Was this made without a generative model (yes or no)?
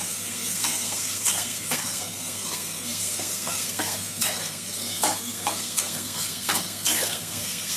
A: no